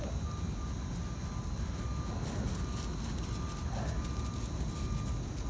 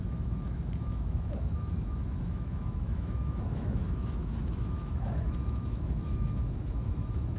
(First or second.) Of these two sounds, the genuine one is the first